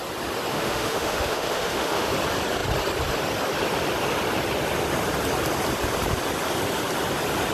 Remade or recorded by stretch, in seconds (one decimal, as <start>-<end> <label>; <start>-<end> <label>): 0.0-0.5 recorded; 0.5-2.1 remade; 2.1-7.5 recorded